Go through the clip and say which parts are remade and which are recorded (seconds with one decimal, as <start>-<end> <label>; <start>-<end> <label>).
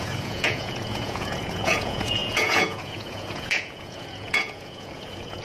0.0-5.4 remade